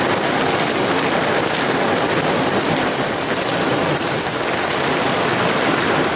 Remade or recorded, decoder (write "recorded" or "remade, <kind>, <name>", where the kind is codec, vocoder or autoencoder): recorded